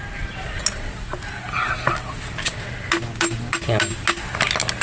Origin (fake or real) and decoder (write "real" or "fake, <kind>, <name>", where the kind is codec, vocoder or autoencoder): real